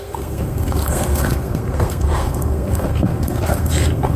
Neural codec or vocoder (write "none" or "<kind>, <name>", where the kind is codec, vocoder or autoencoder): codec, SNAC